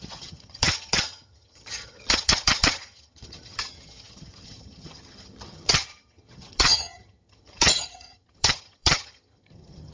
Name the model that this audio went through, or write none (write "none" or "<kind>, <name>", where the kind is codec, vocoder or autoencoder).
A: vocoder, HiFi-GAN